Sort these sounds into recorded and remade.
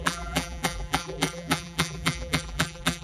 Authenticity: remade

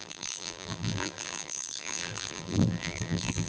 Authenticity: remade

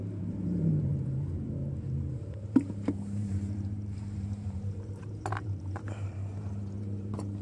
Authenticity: remade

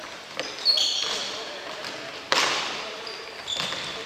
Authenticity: remade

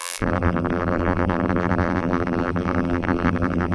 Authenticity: remade